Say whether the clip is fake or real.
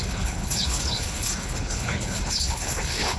fake